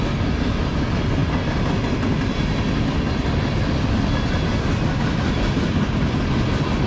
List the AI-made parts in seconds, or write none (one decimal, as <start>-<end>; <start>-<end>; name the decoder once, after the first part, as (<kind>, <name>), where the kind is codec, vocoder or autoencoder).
none